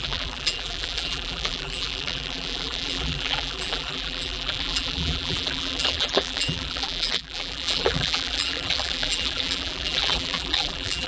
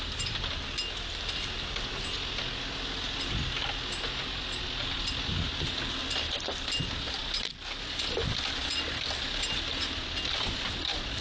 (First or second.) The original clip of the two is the second